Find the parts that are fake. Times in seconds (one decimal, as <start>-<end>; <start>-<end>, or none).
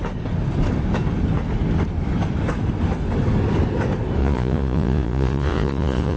4.2-6.2